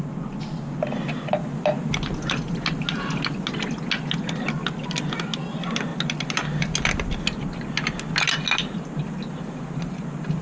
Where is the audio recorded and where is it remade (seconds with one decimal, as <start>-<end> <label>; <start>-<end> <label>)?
0.0-10.4 recorded